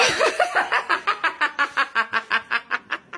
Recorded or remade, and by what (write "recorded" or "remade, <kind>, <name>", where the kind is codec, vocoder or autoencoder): recorded